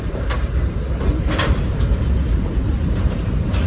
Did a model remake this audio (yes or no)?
yes